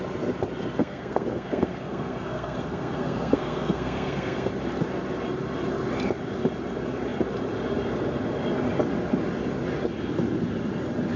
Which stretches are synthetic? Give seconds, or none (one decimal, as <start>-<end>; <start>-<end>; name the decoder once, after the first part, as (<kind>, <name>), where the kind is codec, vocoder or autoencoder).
0.8-4.5 (codec, SNAC)